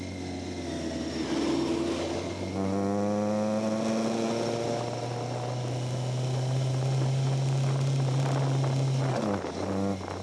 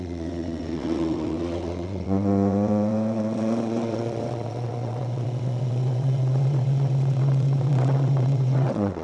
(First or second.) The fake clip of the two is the second